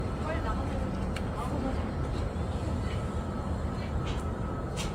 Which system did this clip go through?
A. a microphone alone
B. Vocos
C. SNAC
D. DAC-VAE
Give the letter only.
A